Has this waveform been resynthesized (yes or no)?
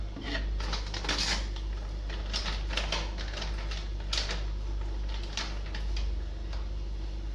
no